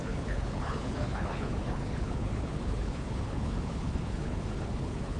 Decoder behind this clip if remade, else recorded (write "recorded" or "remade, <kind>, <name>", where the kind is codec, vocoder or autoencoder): remade, codec, HILCodec